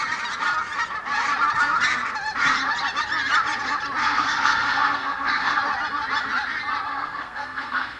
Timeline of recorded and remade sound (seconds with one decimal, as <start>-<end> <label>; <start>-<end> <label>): 0.0-4.0 recorded; 4.0-5.6 remade; 5.6-6.9 recorded; 6.9-8.0 remade